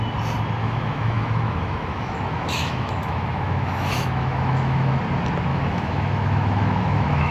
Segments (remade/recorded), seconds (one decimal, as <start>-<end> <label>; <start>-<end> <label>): 0.0-0.6 recorded; 0.6-5.0 remade; 5.0-5.5 recorded; 5.5-7.3 remade